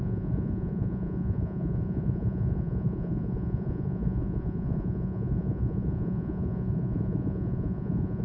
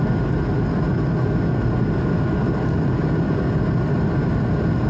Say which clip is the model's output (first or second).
first